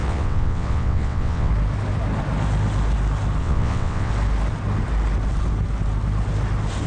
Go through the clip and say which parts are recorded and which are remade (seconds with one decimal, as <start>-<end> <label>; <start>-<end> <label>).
0.0-1.5 remade; 1.5-3.4 recorded; 3.4-4.1 remade; 4.1-6.9 recorded